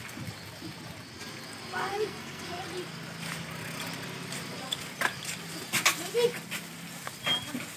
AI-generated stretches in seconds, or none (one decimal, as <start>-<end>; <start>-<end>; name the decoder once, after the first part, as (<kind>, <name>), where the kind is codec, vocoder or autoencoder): 1.9-2.6 (codec, SNAC)